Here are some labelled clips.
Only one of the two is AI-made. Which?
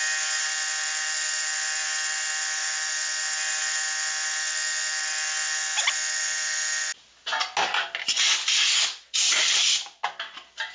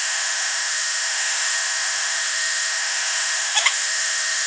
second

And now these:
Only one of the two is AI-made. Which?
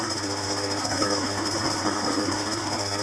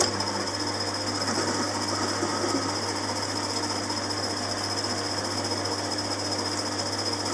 first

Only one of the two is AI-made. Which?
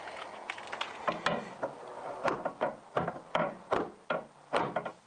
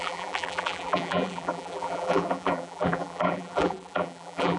second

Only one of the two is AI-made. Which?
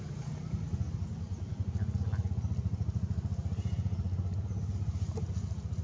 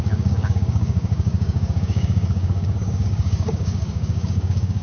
second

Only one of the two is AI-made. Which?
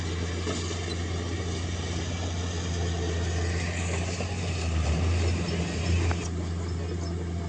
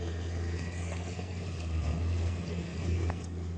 second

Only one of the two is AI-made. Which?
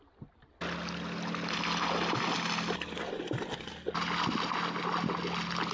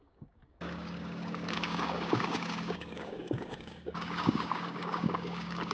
second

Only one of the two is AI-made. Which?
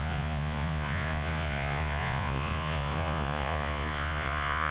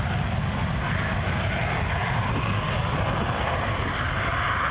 first